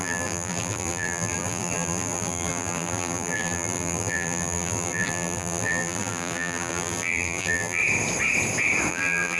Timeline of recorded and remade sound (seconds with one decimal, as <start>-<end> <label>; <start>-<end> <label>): 0.0-7.8 remade; 7.8-8.9 recorded; 8.9-9.4 remade